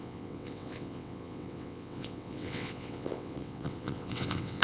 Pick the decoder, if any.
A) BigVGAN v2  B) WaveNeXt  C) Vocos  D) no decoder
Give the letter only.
B